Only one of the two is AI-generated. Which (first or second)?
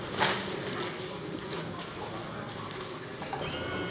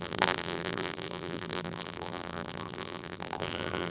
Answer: second